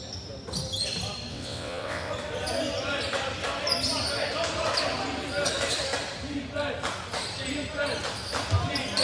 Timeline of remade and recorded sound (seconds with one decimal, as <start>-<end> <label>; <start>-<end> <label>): 0.0-1.3 recorded; 1.3-2.1 remade; 2.1-9.0 recorded